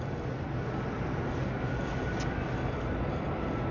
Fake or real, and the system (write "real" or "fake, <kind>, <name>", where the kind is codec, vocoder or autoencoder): real